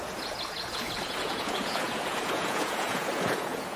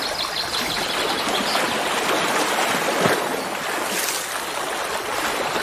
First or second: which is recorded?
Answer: second